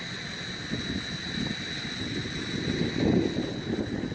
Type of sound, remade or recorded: recorded